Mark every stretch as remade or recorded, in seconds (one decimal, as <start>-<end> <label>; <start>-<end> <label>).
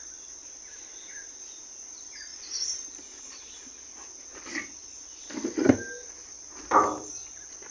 0.0-7.7 recorded